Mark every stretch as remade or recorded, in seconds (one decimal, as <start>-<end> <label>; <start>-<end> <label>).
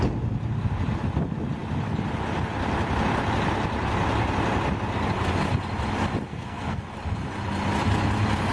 0.0-6.3 recorded; 6.3-6.8 remade; 6.8-8.5 recorded